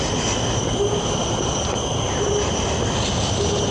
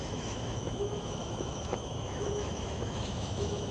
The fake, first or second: second